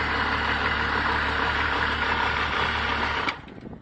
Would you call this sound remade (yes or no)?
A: no